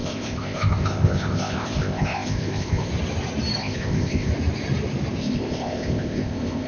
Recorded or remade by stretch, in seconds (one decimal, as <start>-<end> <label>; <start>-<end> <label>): 0.0-2.9 remade; 2.9-3.6 recorded; 3.6-4.3 remade; 4.3-5.2 recorded; 5.2-6.7 remade